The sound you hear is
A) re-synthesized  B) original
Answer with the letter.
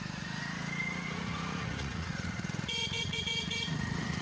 A